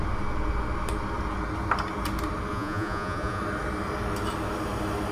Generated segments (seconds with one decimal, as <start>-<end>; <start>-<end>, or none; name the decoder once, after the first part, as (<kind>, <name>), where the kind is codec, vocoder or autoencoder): 2.5-3.4 (vocoder, Vocos)